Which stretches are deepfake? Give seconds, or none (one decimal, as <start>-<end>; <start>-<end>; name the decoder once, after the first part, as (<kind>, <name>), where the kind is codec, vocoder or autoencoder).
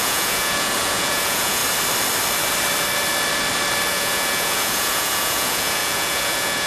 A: 0.0-1.6 (vocoder, Vocos); 3.9-6.7